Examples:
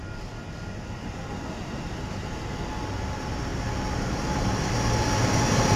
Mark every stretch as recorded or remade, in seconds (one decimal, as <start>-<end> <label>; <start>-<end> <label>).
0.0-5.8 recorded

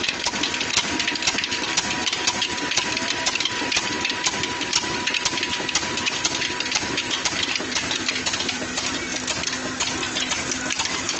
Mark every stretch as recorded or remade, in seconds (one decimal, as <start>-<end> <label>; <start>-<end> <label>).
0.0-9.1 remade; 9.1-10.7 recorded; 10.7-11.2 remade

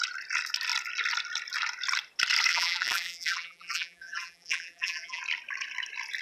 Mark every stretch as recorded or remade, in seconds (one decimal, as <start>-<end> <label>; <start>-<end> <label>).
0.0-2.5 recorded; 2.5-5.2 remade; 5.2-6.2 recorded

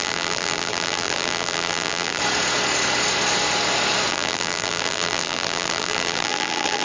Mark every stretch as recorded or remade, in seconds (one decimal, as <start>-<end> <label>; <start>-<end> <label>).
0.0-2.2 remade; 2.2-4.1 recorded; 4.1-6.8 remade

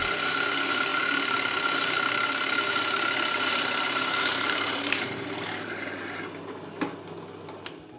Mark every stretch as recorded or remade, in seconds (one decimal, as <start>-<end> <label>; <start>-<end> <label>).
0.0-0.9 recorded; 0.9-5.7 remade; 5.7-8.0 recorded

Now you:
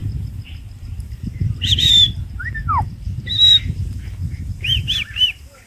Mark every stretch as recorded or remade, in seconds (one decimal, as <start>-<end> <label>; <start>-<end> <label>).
0.0-5.7 remade

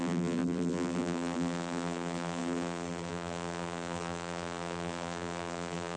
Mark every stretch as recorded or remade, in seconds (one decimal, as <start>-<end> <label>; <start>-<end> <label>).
0.0-6.0 remade

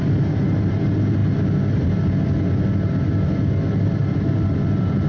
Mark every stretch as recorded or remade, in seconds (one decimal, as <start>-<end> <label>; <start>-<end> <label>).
0.0-5.1 recorded